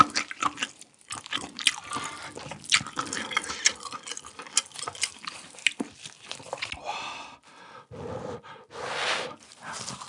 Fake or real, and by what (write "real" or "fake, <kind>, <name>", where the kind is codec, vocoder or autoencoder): real